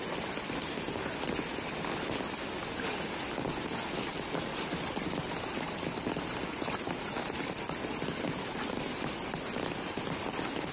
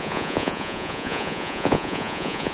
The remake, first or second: second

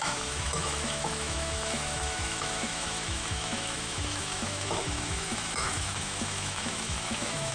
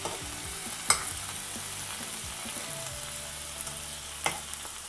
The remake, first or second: first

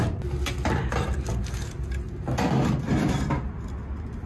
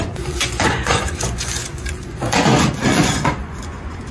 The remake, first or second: second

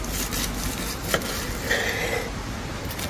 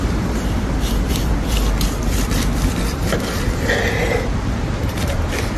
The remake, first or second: second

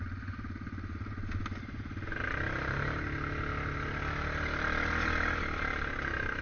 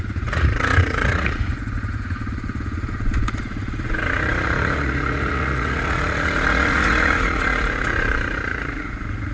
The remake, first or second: second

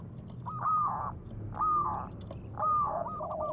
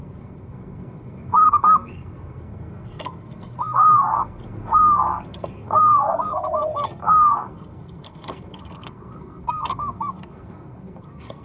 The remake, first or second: second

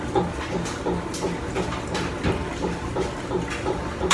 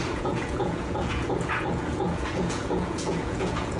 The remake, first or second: second